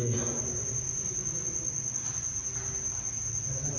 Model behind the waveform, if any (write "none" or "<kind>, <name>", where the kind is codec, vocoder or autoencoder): none